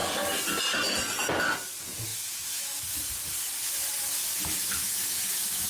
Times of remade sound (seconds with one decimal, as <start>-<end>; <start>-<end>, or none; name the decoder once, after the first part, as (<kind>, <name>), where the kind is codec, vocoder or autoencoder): 2.1-3.1 (autoencoder, DAC-VAE); 4.2-5.7